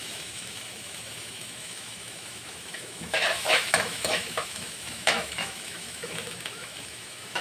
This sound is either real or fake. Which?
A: fake